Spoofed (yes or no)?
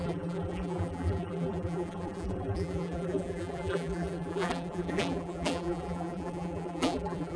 yes